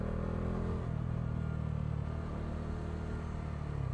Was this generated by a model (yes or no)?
no